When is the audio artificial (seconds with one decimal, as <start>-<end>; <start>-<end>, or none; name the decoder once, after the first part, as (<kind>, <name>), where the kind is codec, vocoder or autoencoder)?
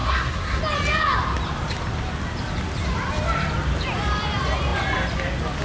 0.0-0.6 (codec, SNAC)